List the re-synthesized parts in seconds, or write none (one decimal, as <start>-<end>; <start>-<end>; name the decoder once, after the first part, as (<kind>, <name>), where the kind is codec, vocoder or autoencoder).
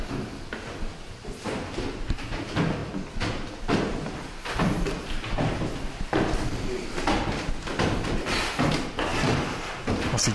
9.1-9.9 (vocoder, BigVGAN v2)